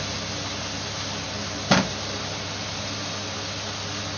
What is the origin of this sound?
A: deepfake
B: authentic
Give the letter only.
B